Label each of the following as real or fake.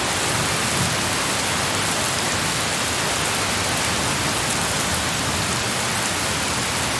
real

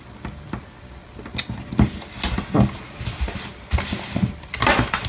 real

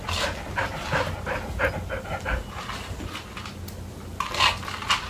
real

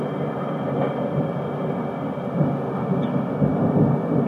real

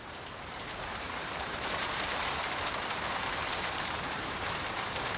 fake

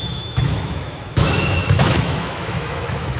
fake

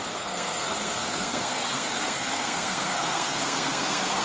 fake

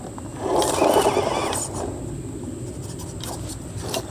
real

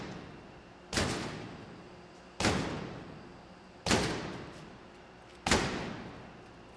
real